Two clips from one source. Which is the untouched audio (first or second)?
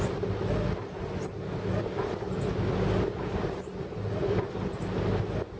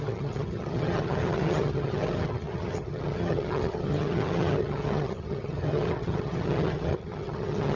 first